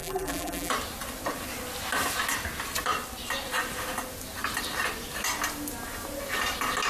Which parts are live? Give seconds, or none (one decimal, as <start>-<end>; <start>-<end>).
0.7-6.9